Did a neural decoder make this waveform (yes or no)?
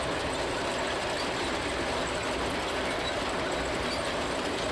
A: no